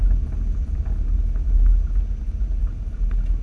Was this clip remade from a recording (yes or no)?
no